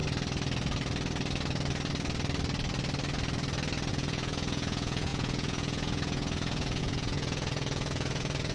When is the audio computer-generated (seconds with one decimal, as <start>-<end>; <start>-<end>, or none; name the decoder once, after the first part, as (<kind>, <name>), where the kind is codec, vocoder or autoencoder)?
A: 3.9-8.5 (vocoder, Vocos)